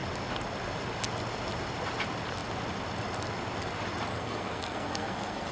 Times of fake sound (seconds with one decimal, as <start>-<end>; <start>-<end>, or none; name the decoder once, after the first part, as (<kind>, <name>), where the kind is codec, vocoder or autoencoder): 4.1-5.5 (codec, SNAC)